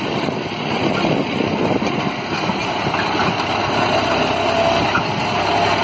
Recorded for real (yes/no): yes